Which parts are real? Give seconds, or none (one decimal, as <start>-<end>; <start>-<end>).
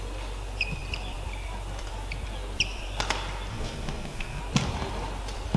0.0-3.5; 4.4-5.6